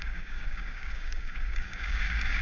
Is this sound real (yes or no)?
no